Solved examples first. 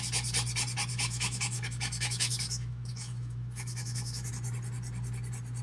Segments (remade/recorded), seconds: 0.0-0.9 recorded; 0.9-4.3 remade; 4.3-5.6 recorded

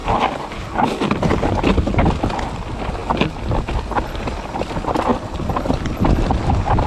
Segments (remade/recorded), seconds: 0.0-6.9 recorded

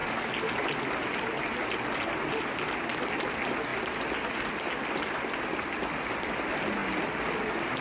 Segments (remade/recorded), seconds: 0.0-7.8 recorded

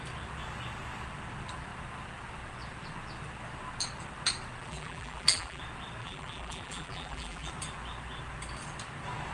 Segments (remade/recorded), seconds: 0.0-4.6 recorded; 4.6-5.6 remade; 5.6-6.0 recorded; 6.0-7.5 remade; 7.5-9.3 recorded

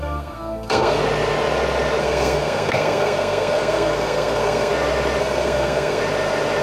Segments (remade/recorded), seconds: 0.0-1.0 remade; 1.0-2.0 recorded; 2.0-4.7 remade; 4.7-5.2 recorded; 5.2-6.0 remade; 6.0-6.6 recorded